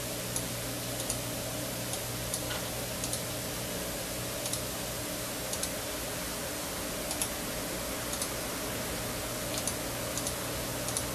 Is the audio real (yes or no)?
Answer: yes